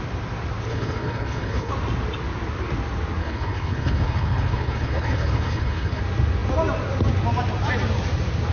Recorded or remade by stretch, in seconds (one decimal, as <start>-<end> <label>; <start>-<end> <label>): 0.0-0.7 recorded; 0.7-1.7 remade; 1.7-3.2 recorded; 3.2-6.0 remade; 6.0-8.5 recorded